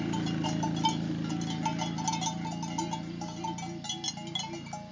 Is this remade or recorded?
recorded